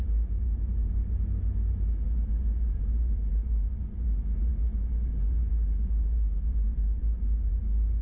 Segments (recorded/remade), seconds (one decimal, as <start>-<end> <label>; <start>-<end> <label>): 0.0-8.0 recorded